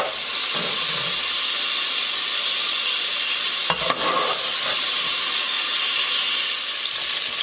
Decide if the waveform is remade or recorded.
recorded